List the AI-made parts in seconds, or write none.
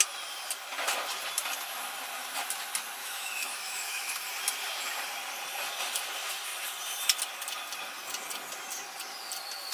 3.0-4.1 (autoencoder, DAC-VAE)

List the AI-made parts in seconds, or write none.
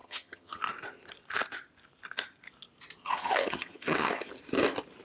0.0-0.6 (vocoder, HiFi-GAN); 3.0-4.3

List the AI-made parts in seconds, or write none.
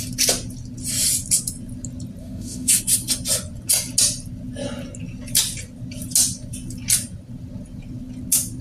2.2-2.8 (autoencoder, DAC-VAE)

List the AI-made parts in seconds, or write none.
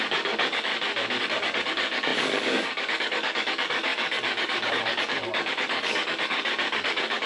0.0-0.7 (codec, DAC); 1.2-7.3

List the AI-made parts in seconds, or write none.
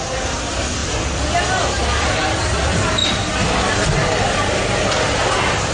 none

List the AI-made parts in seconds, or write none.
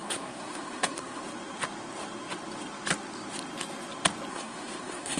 0.0-1.2 (codec, SNAC); 4.3-5.2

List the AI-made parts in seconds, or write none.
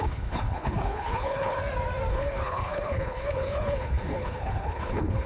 0.0-1.6 (codec, HILCodec); 2.1-5.3